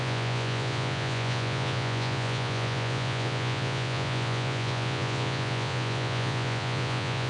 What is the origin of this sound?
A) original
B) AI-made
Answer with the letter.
B